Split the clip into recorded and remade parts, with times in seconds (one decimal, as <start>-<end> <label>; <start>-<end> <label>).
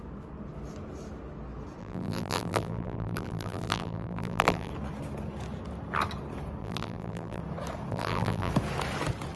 0.0-1.8 recorded; 1.8-4.7 remade; 4.7-6.6 recorded; 6.6-7.4 remade; 7.4-7.9 recorded; 7.9-8.5 remade; 8.5-9.4 recorded